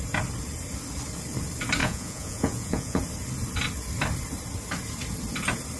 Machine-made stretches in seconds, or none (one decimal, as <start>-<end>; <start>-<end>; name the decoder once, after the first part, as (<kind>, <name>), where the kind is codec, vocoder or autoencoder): 1.8-3.0 (vocoder, Vocos)